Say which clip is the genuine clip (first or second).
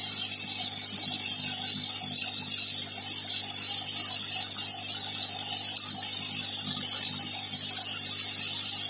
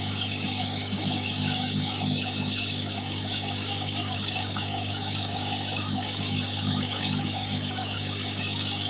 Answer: first